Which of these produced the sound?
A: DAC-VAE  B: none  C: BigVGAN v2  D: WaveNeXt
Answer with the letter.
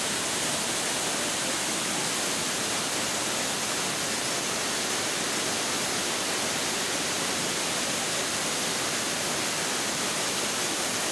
B